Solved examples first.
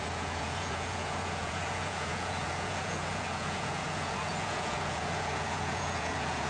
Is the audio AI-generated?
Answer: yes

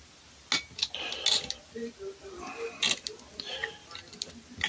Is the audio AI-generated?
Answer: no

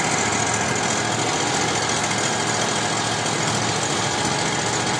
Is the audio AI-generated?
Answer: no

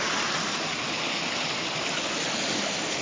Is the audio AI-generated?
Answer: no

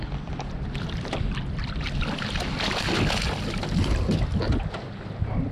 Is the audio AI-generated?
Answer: no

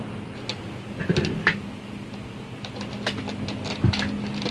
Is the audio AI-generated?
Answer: no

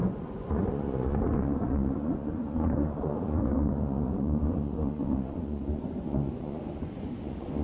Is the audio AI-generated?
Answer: yes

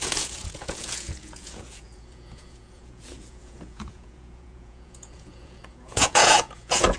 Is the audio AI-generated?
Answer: yes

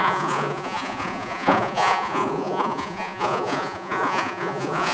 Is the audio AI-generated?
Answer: yes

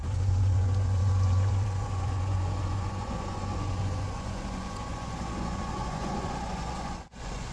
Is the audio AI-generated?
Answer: yes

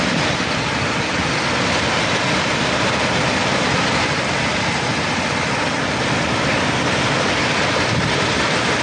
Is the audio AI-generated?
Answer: no